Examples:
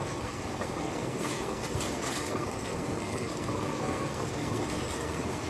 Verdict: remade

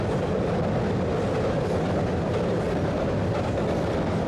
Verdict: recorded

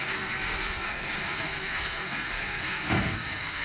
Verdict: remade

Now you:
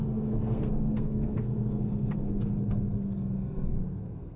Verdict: remade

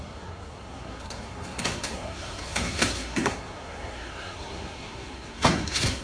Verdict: remade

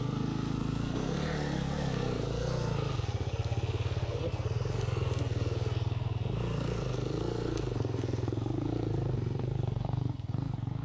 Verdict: remade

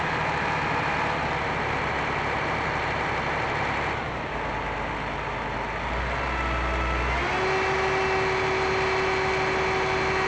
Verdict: recorded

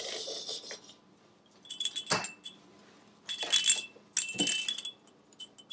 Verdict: recorded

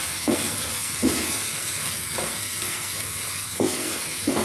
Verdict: remade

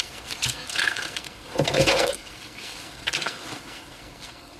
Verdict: remade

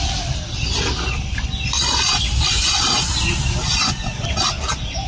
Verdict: recorded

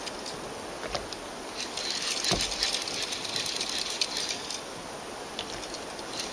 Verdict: recorded